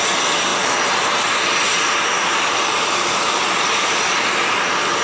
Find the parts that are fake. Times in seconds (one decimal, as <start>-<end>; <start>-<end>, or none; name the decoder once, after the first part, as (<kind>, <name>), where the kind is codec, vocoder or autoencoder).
0.5-3.5 (vocoder, BigVGAN v2)